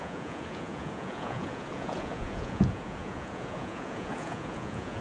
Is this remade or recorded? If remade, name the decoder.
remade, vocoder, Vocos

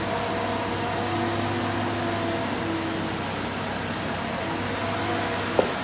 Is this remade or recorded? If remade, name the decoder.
recorded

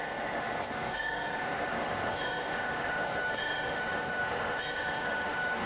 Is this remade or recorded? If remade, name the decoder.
remade, autoencoder, DAC-VAE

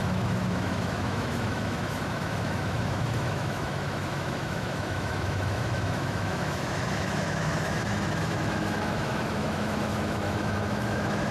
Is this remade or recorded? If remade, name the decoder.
remade, autoencoder, DAC-VAE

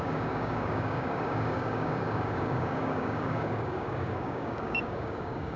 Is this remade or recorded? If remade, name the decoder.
remade, codec, DAC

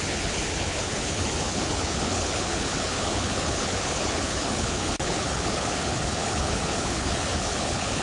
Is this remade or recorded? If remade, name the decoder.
remade, codec, HILCodec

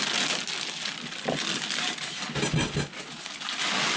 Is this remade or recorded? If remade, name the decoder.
recorded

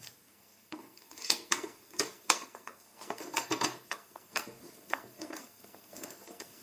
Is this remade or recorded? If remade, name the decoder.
remade, codec, SNAC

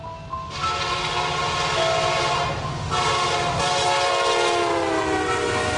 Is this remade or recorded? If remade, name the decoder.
recorded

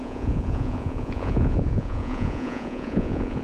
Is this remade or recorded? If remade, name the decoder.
remade, vocoder, Vocos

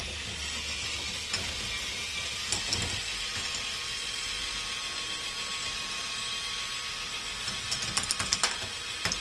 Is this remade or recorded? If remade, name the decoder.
recorded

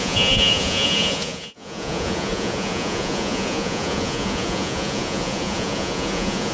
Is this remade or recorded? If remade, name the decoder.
remade, vocoder, Vocos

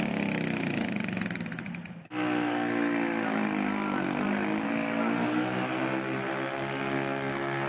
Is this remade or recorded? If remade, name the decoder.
recorded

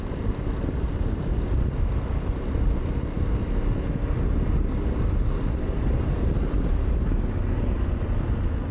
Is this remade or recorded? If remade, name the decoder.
recorded